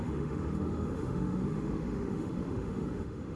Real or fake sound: fake